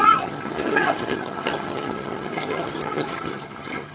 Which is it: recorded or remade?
remade